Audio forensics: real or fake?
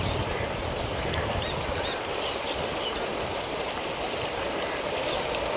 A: fake